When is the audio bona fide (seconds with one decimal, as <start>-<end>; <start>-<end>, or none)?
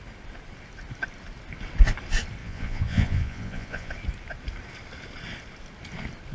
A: 0.0-2.4; 3.9-6.3